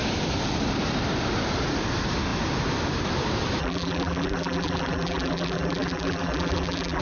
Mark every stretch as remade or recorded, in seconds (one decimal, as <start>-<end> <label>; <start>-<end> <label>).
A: 0.0-3.6 recorded; 3.6-7.0 remade